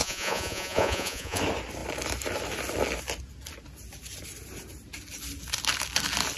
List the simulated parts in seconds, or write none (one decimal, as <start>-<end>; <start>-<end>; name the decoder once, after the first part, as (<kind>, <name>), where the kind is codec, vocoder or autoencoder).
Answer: 0.0-1.4 (vocoder, Vocos)